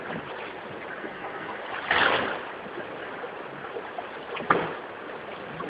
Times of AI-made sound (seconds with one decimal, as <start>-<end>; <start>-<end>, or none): 1.0-1.6